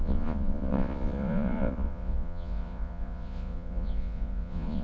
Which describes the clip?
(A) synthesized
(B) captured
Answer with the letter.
A